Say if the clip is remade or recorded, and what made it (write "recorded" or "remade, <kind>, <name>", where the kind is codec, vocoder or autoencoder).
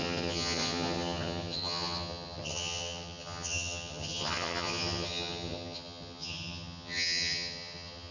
remade, vocoder, HiFi-GAN